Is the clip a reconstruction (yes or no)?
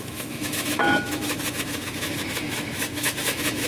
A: yes